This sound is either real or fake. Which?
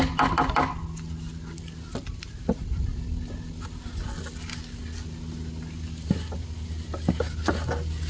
real